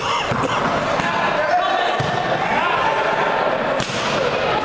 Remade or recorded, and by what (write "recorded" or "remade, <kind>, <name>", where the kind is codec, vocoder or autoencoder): recorded